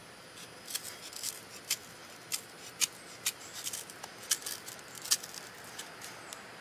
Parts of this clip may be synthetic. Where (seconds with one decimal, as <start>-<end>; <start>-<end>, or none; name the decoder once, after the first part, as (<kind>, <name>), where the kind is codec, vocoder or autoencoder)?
none